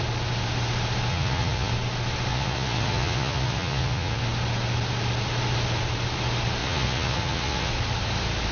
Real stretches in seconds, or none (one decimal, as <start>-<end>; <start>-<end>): 0.0-1.1; 1.7-2.3; 4.2-6.6; 7.7-8.5